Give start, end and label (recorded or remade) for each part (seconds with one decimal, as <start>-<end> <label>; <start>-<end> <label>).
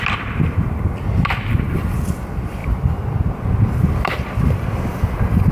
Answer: 0.0-5.5 recorded